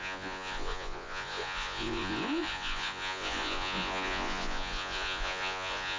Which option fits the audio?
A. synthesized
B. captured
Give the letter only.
A